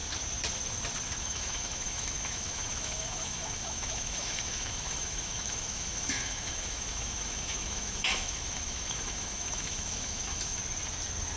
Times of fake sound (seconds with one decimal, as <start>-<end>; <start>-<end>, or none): 1.2-10.6